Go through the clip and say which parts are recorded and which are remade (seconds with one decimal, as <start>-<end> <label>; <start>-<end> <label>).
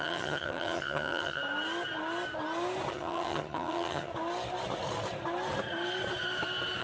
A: 0.0-1.4 remade; 1.4-2.9 recorded; 2.9-4.1 remade; 4.1-6.8 recorded